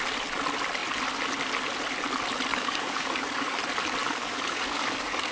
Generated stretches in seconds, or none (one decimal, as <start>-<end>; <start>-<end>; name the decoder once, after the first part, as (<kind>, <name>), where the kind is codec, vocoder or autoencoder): 2.5-3.6 (codec, DAC); 4.0-5.3